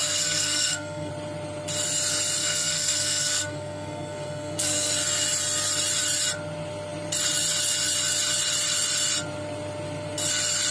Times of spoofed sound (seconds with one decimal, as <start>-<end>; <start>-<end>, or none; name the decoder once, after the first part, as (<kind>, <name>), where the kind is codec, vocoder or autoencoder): 0.0-1.1 (codec, SNAC); 2.4-4.9